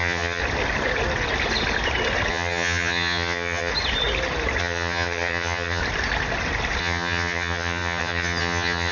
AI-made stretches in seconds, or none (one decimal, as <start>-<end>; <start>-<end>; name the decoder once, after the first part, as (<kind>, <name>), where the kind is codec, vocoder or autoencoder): 0.0-0.4 (vocoder, HiFi-GAN); 2.3-3.7; 4.6-5.8; 6.8-8.9